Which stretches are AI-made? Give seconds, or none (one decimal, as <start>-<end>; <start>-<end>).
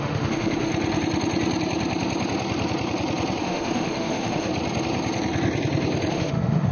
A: 0.0-0.7; 3.4-4.5; 6.1-6.7